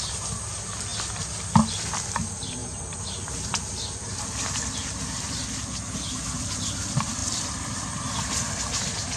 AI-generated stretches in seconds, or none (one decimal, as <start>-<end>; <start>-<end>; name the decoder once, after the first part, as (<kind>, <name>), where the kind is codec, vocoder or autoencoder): 0.9-1.6 (vocoder, BigVGAN v2); 2.6-5.8